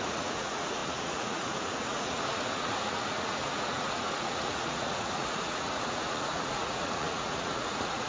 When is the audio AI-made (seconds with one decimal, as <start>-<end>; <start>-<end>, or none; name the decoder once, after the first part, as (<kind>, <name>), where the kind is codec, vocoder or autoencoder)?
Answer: 0.0-8.1 (vocoder, Vocos)

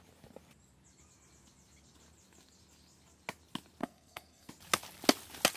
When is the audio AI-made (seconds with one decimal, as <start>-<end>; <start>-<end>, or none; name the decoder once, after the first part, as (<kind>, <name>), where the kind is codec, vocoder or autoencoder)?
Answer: 3.8-4.5 (codec, SNAC)